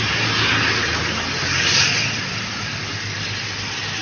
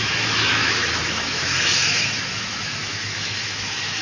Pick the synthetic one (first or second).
second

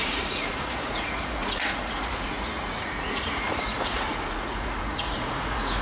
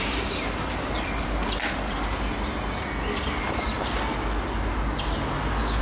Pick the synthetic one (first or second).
first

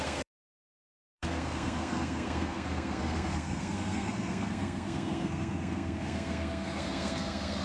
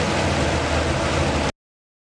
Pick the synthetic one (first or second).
first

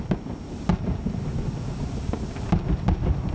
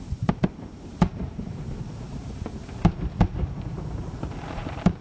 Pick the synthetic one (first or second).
second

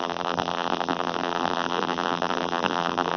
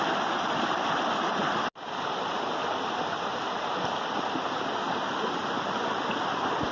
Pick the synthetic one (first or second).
first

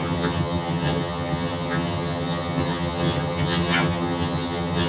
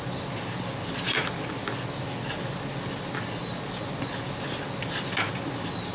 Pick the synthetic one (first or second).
first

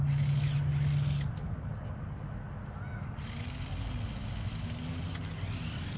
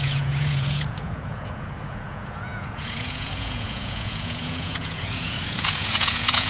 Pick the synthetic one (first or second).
second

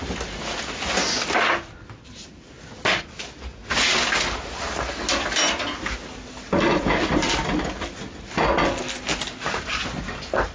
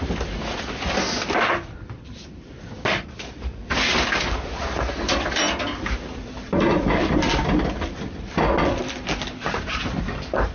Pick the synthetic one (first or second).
second